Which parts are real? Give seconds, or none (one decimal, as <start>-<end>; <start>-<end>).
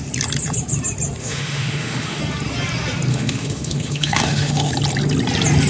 0.0-1.2; 2.2-3.1; 4.7-5.7